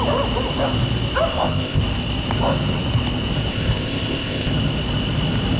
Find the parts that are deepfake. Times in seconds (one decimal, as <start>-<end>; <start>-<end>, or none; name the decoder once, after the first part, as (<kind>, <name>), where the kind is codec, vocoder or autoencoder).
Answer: 1.3-1.8 (codec, ZipCodec); 3.5-4.5